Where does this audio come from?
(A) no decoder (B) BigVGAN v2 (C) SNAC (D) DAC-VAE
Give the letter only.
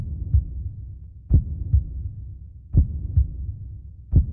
A